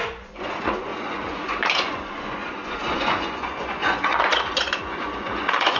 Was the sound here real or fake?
fake